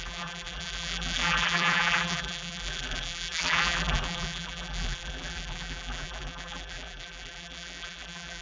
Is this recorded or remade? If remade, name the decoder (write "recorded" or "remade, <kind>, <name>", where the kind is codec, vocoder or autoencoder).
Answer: remade, vocoder, BigVGAN v2